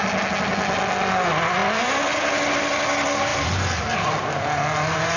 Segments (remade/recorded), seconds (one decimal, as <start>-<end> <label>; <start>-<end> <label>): 0.0-5.2 recorded